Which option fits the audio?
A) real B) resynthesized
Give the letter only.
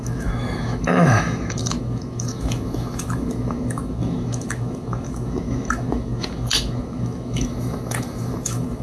B